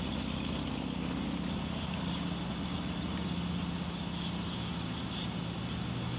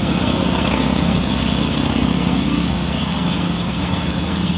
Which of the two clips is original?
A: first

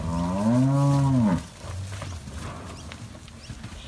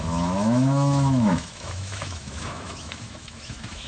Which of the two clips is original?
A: first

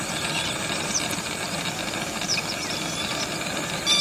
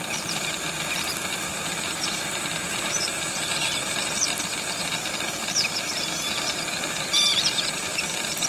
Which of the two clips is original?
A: first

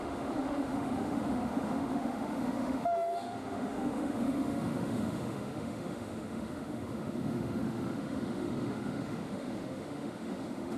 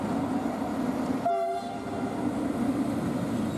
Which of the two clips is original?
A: second